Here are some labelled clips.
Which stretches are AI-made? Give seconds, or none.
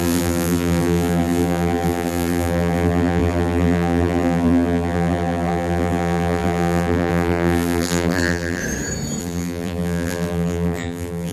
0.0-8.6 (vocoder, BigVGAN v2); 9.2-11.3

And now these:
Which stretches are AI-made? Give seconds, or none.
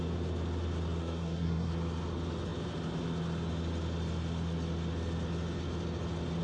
1.0-1.7 (codec, SNAC)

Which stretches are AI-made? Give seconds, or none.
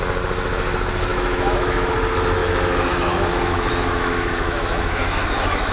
1.1-1.9 (autoencoder, DAC-VAE); 2.4-5.7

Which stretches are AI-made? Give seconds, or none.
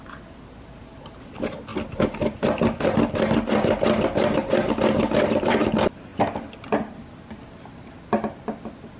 none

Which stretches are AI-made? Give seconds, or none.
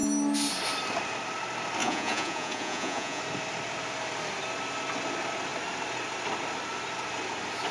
1.8-3.2 (vocoder, Vocos)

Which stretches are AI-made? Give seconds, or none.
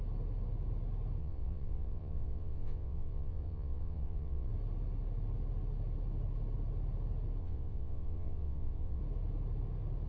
1.2-4.5 (vocoder, WaveNeXt); 7.4-9.0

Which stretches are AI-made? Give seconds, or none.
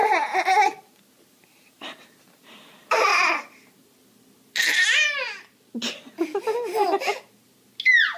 1.3-3.1 (vocoder, BigVGAN v2)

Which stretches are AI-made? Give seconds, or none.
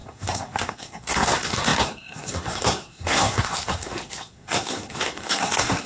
0.0-5.9 (codec, SNAC)